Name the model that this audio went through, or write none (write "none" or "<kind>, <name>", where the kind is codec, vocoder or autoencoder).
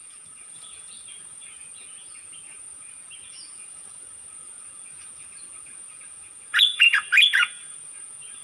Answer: vocoder, Vocos